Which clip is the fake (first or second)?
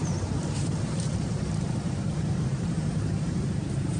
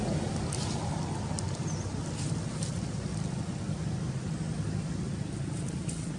first